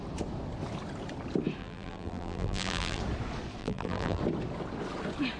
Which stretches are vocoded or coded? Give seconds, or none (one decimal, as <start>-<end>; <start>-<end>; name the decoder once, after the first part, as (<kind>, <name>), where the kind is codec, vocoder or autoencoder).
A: 1.6-3.0 (vocoder, BigVGAN v2); 3.6-4.2